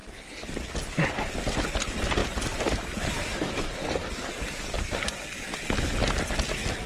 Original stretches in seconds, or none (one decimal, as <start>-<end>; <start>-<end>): 0.0-2.2; 5.2-6.9

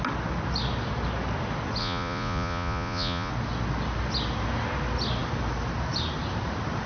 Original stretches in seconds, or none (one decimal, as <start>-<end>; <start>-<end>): 0.0-1.8; 3.3-6.9

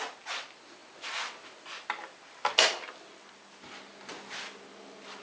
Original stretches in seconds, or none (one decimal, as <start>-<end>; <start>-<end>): 0.0-5.2

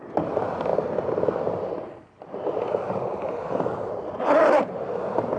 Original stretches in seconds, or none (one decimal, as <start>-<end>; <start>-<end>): 0.0-5.4

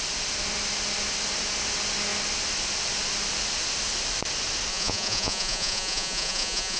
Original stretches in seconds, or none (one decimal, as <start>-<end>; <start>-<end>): 0.0-4.7

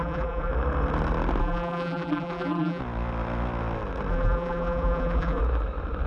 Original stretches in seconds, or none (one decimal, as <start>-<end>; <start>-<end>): 0.5-1.4; 2.8-4.1; 5.4-6.1

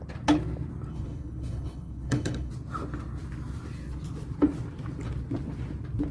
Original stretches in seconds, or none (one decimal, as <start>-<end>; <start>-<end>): 0.0-0.9; 2.5-6.1